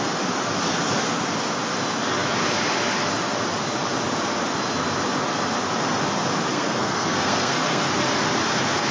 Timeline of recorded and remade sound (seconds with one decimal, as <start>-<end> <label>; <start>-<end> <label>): 0.0-6.5 recorded; 6.5-7.9 remade; 7.9-8.9 recorded